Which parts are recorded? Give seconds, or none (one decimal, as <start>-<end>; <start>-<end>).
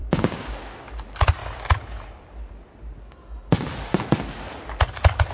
0.5-5.3